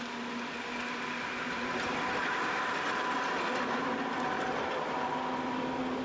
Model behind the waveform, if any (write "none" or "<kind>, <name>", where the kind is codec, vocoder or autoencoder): none